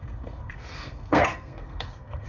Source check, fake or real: fake